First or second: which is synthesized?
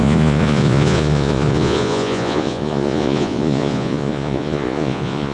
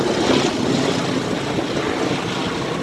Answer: first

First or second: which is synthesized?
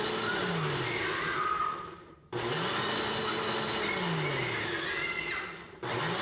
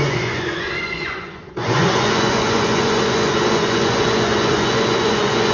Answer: second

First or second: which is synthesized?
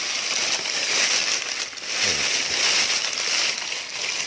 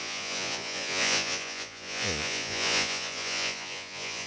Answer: second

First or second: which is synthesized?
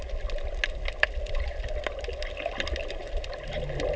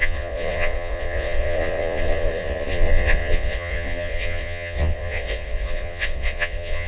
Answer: second